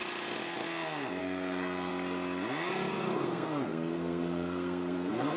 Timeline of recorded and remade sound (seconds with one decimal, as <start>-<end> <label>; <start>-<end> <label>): 0.0-1.2 recorded; 1.2-1.9 remade; 1.9-2.9 recorded; 2.9-5.4 remade